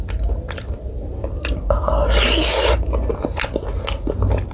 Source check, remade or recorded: recorded